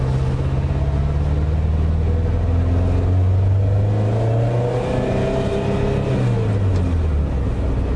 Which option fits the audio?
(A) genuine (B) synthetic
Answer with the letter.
A